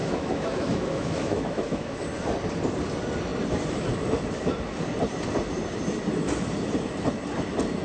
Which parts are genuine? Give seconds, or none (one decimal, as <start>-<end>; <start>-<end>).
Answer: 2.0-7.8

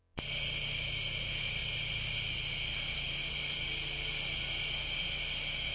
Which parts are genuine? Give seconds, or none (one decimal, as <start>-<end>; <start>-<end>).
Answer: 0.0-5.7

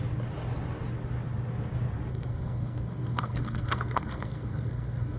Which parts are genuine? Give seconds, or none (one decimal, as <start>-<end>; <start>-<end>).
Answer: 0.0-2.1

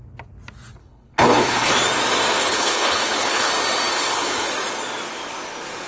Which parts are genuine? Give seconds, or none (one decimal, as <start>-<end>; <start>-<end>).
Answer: 0.0-0.8; 1.7-2.4; 3.5-3.9; 4.5-5.9